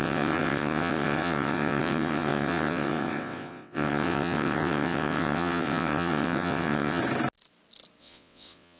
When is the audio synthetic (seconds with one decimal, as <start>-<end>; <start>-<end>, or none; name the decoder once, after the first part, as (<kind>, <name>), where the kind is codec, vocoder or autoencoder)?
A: 0.0-7.0 (vocoder, WaveNeXt); 8.0-8.8